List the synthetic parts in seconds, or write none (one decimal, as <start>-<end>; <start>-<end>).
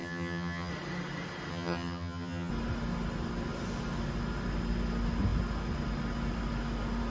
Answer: 0.0-0.7; 1.5-2.5